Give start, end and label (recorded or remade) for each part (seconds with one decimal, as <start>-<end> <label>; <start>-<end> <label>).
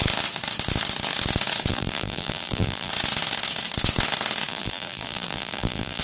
0.0-1.7 recorded; 1.7-2.9 remade; 2.9-4.5 recorded; 4.5-6.0 remade